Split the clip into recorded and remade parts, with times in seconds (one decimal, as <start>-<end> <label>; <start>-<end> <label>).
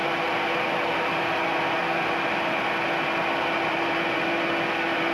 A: 0.0-5.1 recorded